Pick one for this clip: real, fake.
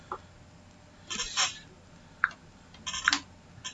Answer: real